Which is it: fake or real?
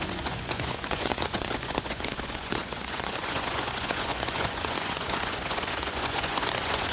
fake